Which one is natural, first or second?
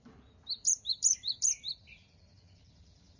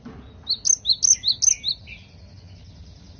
second